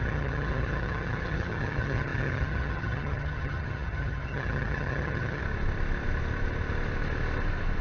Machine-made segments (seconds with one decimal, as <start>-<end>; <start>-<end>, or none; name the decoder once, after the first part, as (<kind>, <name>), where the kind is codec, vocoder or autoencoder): 0.0-5.4 (vocoder, HiFi-GAN)